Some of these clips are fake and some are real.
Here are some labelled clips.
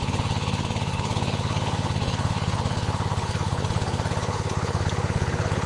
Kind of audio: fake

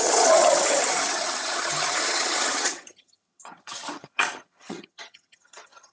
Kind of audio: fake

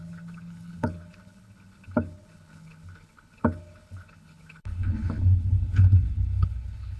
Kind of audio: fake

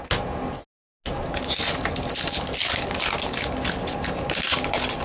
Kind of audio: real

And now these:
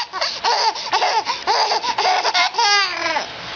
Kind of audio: real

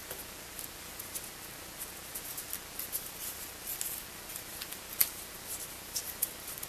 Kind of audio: real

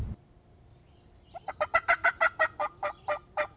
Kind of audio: real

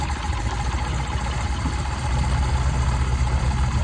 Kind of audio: real